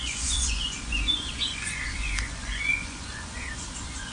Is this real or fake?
fake